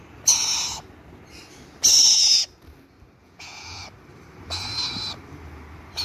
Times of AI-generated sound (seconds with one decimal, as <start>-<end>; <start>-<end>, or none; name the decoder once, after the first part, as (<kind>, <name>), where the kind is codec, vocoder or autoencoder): 3.2-3.8 (vocoder, Vocos)